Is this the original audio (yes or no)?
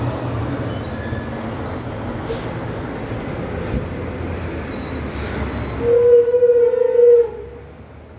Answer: yes